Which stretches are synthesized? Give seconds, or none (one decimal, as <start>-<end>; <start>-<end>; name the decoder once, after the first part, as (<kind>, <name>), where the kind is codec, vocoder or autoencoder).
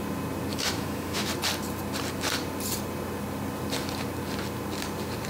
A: 0.5-1.3 (autoencoder, DAC-VAE)